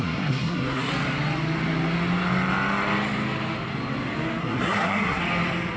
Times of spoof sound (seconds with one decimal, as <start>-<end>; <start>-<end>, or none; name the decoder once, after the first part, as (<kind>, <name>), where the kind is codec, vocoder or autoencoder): 0.0-0.9 (codec, SNAC); 4.4-5.2